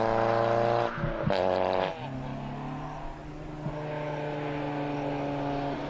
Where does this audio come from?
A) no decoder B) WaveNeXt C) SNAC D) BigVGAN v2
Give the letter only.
A